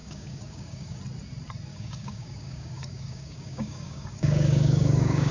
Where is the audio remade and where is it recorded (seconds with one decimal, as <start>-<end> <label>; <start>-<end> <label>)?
0.0-1.0 remade; 1.0-1.7 recorded; 1.7-5.3 remade